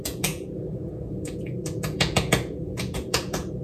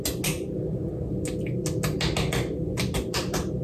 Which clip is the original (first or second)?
second